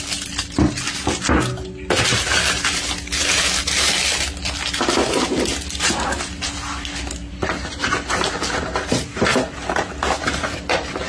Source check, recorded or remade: recorded